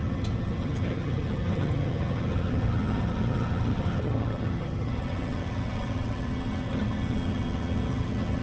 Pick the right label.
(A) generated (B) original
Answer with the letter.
A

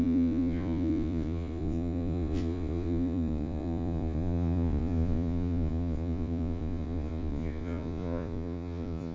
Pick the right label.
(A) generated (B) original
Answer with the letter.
A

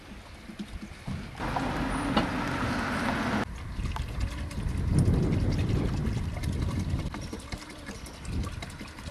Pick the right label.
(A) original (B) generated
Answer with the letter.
A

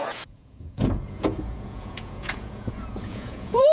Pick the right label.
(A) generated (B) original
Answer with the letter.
A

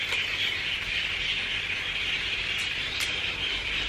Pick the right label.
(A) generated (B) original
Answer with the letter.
B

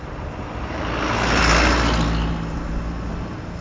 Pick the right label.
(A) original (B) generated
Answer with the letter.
A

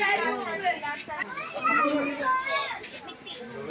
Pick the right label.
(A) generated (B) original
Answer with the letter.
B